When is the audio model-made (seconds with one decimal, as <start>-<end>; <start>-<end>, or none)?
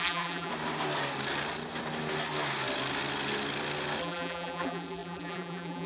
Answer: 0.0-0.5; 4.0-5.9